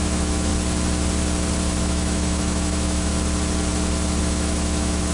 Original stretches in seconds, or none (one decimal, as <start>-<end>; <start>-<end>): 0.5-1.8; 3.1-4.2